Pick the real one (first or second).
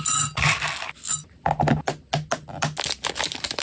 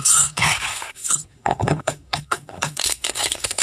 first